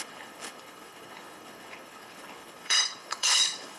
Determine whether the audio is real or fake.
fake